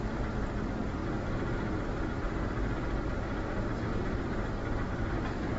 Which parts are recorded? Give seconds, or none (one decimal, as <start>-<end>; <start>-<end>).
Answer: 0.0-3.9; 5.1-5.6